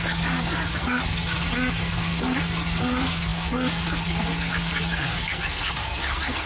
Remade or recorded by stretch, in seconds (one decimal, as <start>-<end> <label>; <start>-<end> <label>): 0.0-6.5 remade